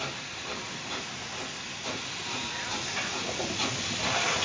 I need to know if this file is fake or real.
real